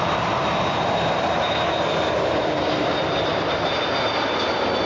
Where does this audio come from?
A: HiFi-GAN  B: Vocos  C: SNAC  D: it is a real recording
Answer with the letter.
D